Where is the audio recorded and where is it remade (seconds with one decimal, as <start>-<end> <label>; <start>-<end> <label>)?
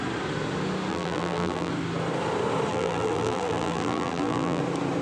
0.0-0.9 recorded; 0.9-1.7 remade; 1.7-2.7 recorded; 2.7-4.6 remade; 4.6-5.0 recorded